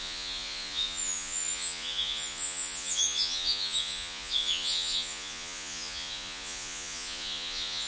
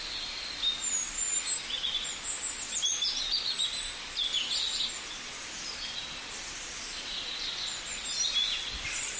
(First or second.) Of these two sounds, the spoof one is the first